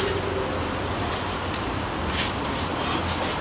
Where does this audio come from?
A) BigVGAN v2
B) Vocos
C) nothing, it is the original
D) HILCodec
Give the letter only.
C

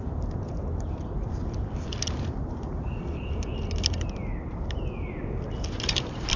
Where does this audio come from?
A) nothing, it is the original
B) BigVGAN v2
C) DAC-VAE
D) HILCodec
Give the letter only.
A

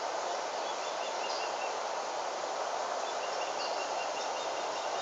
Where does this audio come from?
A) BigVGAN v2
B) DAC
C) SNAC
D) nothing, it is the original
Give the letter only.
D